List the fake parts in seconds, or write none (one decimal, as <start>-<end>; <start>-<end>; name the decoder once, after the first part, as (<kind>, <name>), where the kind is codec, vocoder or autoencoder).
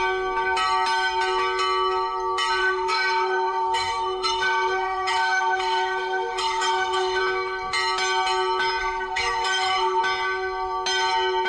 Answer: 2.6-7.2 (codec, SNAC); 8.8-10.0